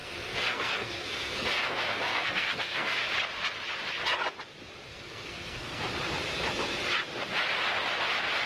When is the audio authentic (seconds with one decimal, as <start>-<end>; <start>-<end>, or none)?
3.1-4.9; 5.8-8.5